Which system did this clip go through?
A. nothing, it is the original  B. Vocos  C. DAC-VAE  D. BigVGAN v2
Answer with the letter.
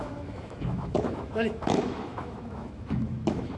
C